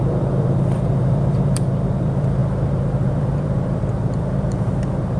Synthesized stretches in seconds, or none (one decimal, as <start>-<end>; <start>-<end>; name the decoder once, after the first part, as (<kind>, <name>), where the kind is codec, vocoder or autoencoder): 0.0-5.2 (vocoder, BigVGAN v2)